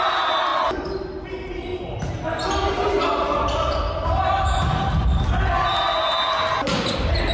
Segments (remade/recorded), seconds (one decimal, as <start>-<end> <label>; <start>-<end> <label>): 0.0-7.3 recorded